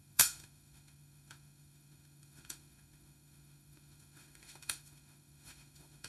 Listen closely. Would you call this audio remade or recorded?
remade